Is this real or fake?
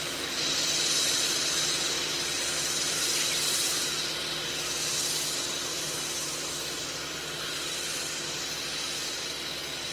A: real